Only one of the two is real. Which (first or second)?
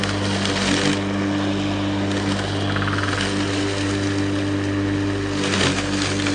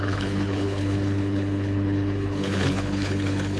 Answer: first